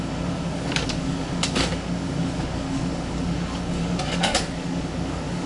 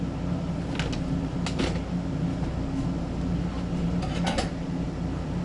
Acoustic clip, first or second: second